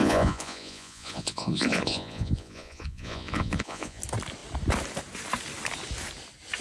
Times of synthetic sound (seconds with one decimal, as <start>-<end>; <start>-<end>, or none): 0.0-4.0